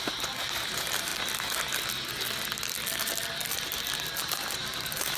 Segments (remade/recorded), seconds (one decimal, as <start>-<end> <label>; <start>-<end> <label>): 0.0-1.1 remade; 1.1-4.2 recorded; 4.2-5.2 remade

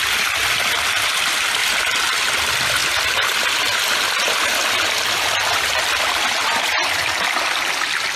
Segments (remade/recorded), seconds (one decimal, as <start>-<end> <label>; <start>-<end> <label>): 0.0-8.2 recorded

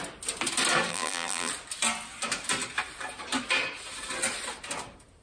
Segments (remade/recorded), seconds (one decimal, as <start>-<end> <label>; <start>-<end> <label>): 0.0-0.9 recorded; 0.9-1.5 remade; 1.5-5.2 recorded